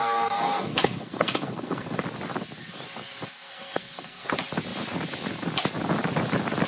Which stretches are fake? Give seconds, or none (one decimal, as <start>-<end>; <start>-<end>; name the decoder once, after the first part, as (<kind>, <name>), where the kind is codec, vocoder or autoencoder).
0.0-2.0 (codec, SNAC); 3.3-4.3

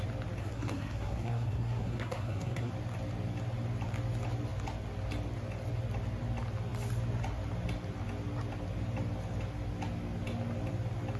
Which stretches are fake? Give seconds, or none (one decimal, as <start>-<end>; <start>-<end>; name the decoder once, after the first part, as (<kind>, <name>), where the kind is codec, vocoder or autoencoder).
0.4-2.7 (codec, SNAC)

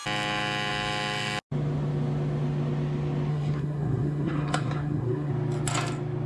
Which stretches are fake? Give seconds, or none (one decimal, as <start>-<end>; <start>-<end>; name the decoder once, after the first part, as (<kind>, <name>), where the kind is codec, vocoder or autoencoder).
3.3-5.3 (codec, SNAC)

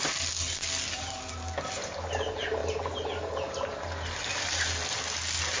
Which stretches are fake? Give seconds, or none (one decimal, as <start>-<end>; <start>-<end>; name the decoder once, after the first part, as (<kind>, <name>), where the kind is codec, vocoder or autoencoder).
none

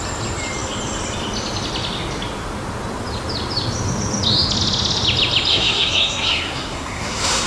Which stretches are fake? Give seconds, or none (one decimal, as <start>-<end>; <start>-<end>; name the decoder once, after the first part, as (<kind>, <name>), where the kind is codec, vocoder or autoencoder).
5.5-7.5 (codec, SNAC)

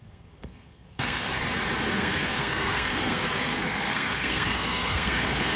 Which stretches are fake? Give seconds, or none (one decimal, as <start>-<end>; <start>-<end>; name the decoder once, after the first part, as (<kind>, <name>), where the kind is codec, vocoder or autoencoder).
0.0-1.3 (codec, SNAC); 1.9-5.6